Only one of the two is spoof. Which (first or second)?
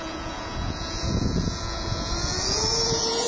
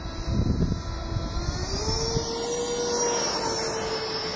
first